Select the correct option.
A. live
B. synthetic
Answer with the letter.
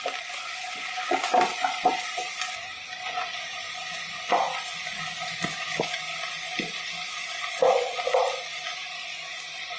A